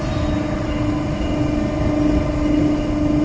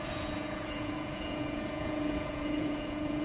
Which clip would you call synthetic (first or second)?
second